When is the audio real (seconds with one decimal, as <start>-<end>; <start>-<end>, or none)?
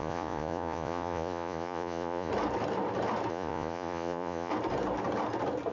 2.3-3.3; 4.5-5.7